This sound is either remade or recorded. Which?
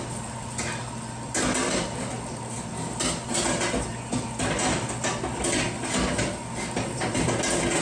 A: recorded